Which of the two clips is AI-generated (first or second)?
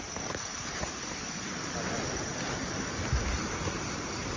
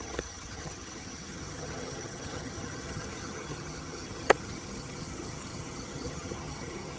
second